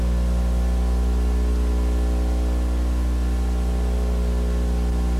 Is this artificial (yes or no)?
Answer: no